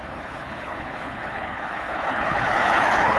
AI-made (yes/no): yes